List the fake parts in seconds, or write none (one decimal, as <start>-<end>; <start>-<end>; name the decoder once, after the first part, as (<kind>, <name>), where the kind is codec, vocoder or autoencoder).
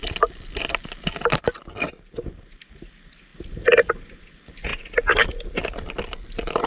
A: none